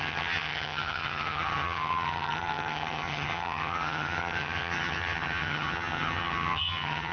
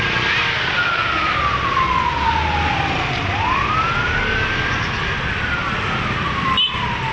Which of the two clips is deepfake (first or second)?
first